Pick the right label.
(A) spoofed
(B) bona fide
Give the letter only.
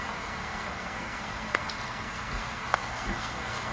A